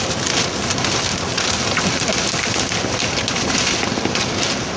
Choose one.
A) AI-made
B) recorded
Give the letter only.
B